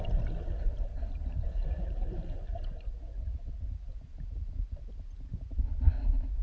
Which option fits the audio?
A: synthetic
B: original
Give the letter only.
B